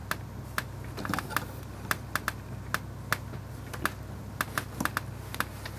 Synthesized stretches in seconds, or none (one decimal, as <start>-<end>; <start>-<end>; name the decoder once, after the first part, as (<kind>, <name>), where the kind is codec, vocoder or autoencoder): none